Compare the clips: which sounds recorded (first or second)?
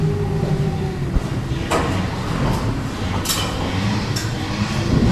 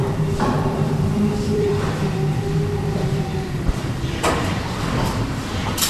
first